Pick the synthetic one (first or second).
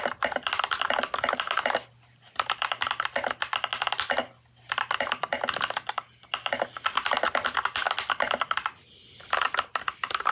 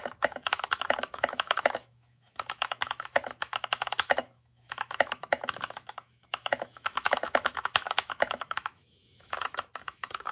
second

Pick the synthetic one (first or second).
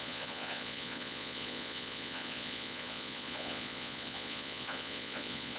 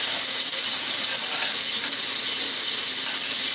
first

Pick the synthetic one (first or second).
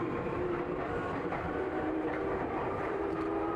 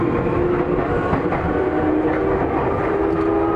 first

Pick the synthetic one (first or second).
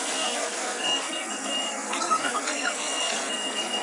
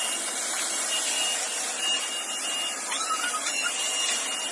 first